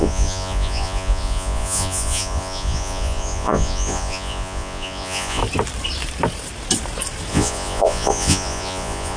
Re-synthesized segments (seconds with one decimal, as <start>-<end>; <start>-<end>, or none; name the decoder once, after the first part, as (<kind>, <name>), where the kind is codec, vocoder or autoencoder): 0.0-5.4 (vocoder, Vocos); 7.3-9.2